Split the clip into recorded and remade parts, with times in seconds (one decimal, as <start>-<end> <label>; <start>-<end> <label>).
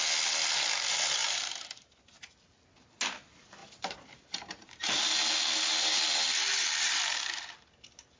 0.0-1.2 recorded; 1.2-2.0 remade; 2.0-3.6 recorded; 3.6-5.0 remade; 5.0-8.2 recorded